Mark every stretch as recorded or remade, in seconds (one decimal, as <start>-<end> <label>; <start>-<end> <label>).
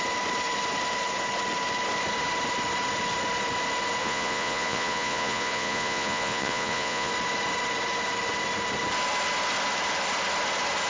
0.0-4.0 recorded; 4.0-7.1 remade; 7.1-10.9 recorded